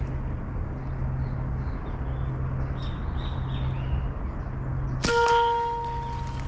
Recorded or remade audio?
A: recorded